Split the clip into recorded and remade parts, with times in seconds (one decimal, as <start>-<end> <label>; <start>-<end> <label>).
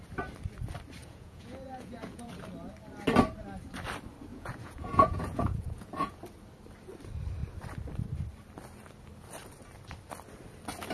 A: 0.0-1.0 recorded; 1.0-2.3 remade; 2.3-4.3 recorded; 4.3-6.2 remade; 6.2-10.9 recorded